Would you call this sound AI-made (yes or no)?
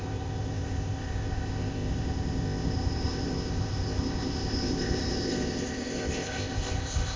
yes